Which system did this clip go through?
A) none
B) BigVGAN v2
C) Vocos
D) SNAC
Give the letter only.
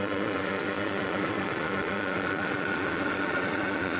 C